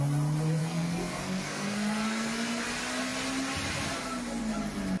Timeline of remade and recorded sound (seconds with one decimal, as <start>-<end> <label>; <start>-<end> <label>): 0.0-0.6 recorded; 0.6-2.6 remade; 2.6-5.0 recorded